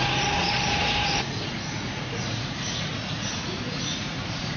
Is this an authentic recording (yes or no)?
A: no